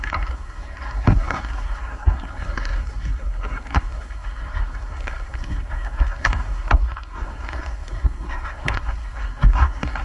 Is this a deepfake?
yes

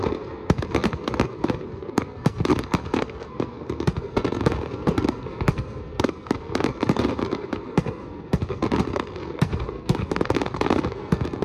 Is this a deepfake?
yes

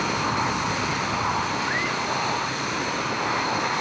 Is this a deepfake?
no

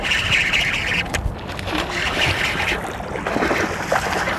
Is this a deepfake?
no